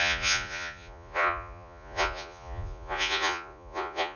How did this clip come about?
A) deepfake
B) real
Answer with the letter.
A